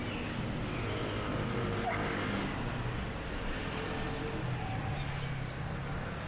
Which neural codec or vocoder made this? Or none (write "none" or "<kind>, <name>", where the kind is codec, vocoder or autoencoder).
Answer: none